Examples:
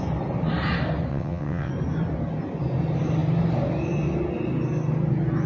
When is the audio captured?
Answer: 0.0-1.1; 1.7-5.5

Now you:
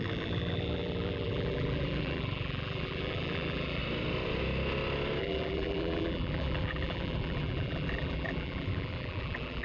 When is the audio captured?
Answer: 3.8-5.2

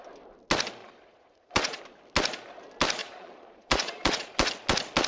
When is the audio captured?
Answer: 0.0-0.8; 1.8-3.0; 4.5-5.1

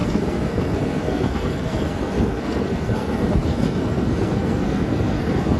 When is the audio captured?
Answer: none

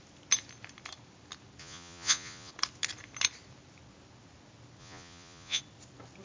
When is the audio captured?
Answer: 0.0-1.6; 2.5-4.8; 5.6-6.2